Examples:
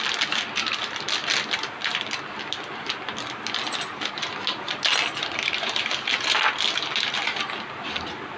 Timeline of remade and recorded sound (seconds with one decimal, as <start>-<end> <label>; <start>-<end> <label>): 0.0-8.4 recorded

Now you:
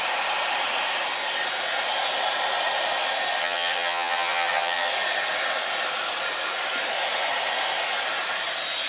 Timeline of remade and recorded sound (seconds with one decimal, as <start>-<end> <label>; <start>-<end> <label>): 0.0-3.4 recorded; 3.4-4.9 remade; 4.9-8.9 recorded

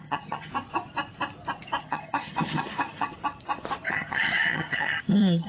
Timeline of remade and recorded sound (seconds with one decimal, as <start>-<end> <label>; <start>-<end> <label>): 0.0-0.5 remade; 0.5-1.8 recorded; 1.8-3.1 remade; 3.1-3.9 recorded; 3.9-5.5 remade

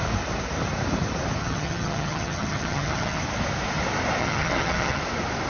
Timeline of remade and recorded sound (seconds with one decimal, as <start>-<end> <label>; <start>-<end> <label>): 0.0-1.4 recorded; 1.4-3.2 remade; 3.2-4.2 recorded; 4.2-5.0 remade; 5.0-5.5 recorded

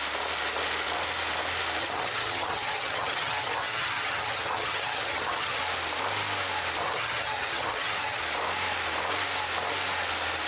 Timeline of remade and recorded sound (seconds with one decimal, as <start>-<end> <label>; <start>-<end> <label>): 0.0-1.8 recorded; 1.8-5.6 remade; 5.6-6.8 recorded; 6.8-8.2 remade; 8.2-10.5 recorded

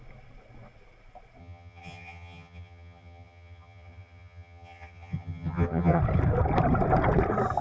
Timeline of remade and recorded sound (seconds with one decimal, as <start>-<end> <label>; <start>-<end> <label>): 0.0-1.4 recorded; 1.4-6.0 remade; 6.0-7.6 recorded